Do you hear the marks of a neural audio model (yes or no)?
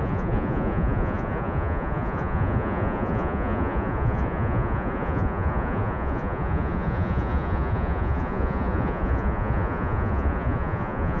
yes